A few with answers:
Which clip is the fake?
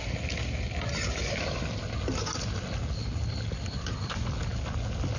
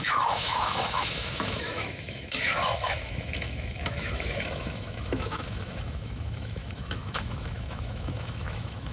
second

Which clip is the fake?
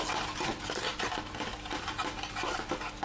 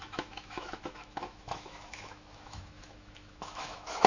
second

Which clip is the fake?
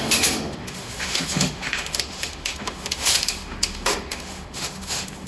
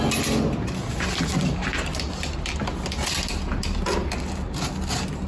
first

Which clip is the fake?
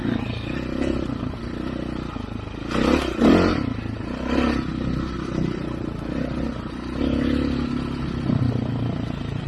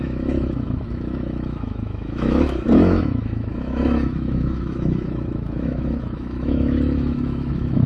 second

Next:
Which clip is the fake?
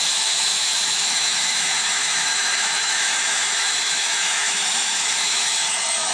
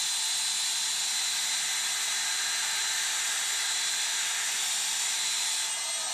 first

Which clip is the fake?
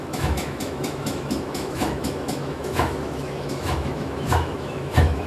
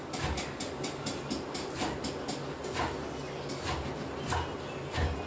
first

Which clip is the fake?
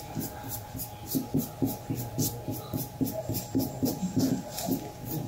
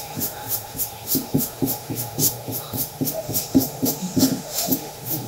second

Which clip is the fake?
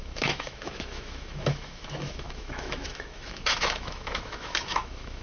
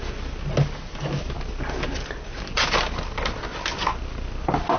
first